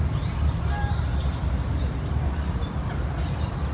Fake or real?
real